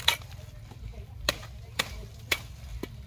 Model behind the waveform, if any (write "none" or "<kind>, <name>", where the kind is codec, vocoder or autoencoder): none